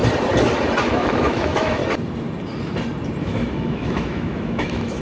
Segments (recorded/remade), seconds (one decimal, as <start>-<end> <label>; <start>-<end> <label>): 0.0-0.9 recorded; 0.9-1.8 remade; 1.8-3.2 recorded; 3.2-5.0 remade